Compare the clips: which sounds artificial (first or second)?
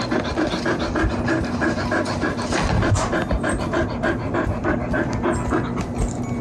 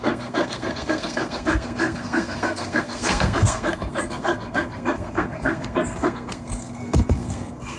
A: second